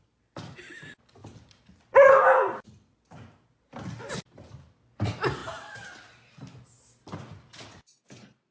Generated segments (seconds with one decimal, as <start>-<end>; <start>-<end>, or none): none